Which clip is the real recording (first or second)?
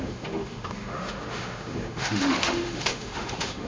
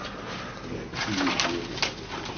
second